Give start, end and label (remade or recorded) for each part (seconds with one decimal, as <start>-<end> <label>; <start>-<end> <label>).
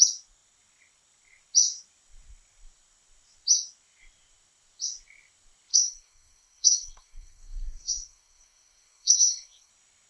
0.0-5.7 recorded; 5.7-9.7 remade; 9.7-10.1 recorded